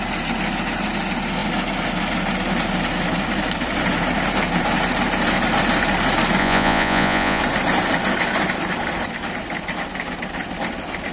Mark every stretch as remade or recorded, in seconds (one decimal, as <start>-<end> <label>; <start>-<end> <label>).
0.0-6.4 recorded; 6.4-7.4 remade; 7.4-11.1 recorded